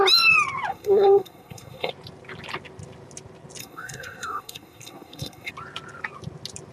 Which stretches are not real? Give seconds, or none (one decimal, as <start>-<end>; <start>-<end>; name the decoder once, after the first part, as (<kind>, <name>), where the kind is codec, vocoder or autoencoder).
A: 0.7-1.9 (codec, SNAC); 3.6-5.5